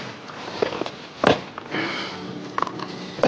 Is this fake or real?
real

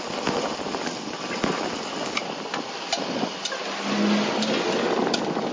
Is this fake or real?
real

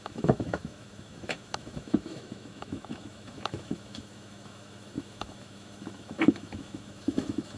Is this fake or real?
fake